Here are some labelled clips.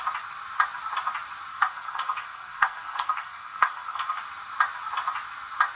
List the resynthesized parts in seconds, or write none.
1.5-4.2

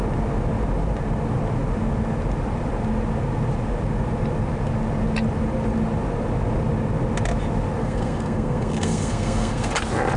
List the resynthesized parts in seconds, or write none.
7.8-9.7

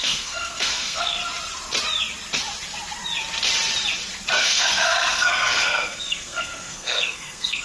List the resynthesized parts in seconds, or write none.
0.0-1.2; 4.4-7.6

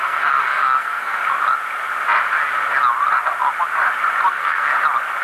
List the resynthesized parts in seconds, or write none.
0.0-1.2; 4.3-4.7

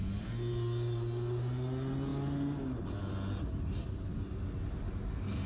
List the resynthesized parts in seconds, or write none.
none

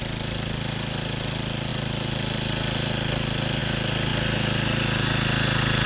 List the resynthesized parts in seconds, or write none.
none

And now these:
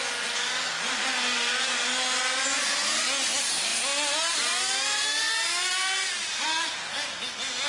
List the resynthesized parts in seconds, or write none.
none

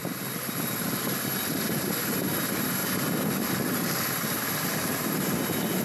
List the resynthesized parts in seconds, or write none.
none